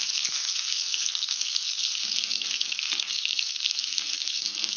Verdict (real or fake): fake